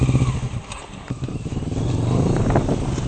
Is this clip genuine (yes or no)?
no